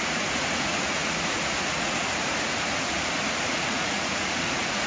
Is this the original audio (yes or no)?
no